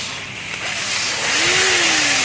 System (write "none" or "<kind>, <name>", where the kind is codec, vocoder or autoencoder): none